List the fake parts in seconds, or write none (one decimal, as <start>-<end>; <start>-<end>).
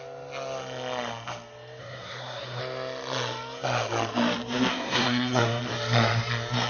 1.8-2.6; 4.7-5.6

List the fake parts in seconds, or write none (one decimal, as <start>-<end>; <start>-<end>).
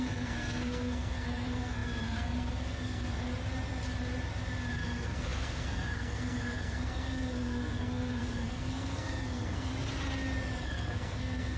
0.0-3.3; 4.7-9.7; 10.6-11.6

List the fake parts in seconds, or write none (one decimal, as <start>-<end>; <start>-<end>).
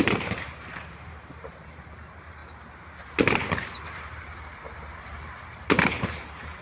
0.0-2.4; 3.1-6.6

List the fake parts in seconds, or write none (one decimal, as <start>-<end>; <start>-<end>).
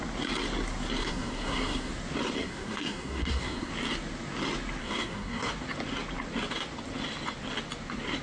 1.0-1.9; 2.4-3.7; 4.8-5.5